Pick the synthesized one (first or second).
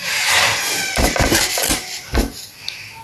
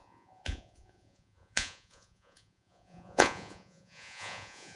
second